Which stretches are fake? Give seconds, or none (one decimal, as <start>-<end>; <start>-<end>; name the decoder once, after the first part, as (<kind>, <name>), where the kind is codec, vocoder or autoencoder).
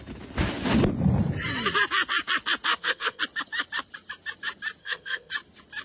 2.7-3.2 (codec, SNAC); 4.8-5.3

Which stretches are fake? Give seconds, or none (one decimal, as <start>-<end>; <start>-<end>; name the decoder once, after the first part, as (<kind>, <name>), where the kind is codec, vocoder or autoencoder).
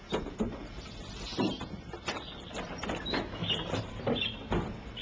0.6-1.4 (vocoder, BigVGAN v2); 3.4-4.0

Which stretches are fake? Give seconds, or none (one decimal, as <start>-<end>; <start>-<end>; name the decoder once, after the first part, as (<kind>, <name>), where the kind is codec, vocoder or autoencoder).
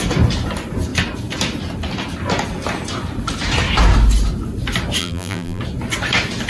5.0-5.6 (vocoder, BigVGAN v2)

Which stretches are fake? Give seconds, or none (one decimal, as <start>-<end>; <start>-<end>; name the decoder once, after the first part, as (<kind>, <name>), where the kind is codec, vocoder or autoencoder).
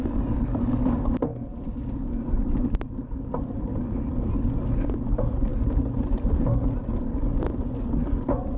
1.5-4.1 (vocoder, BigVGAN v2)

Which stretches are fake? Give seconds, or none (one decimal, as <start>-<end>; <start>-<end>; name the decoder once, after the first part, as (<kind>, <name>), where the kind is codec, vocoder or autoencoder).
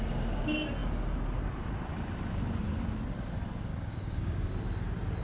3.7-4.5 (codec, DAC)